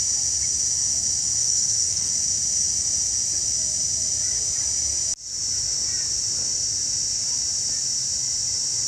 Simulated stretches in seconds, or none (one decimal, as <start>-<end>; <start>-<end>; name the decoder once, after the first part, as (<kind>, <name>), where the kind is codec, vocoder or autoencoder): 1.4-2.1 (codec, SNAC)